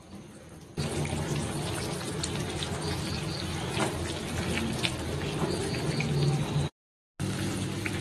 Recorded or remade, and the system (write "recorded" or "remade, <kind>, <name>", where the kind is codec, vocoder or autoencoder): recorded